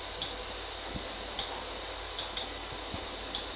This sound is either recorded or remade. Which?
recorded